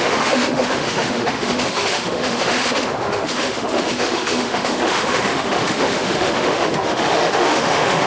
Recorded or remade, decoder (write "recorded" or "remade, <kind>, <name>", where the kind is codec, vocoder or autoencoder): remade, autoencoder, DAC-VAE